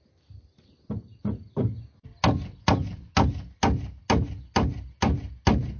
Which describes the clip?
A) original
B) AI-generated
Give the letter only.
A